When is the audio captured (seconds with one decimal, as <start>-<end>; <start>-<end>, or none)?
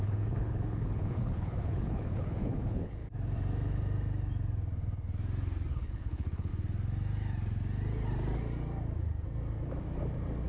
3.0-5.7; 6.5-10.5